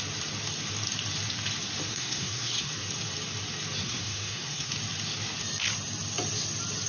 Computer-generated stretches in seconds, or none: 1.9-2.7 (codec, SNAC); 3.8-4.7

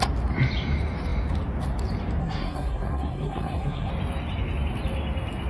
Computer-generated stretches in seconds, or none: 2.2-3.9 (codec, SNAC)